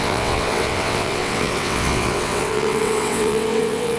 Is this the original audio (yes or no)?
no